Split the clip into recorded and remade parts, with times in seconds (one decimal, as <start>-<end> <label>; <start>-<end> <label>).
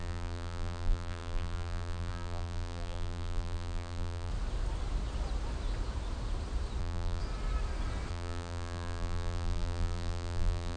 0.0-4.3 remade; 4.3-6.8 recorded; 6.8-7.2 remade; 7.2-8.1 recorded; 8.1-10.8 remade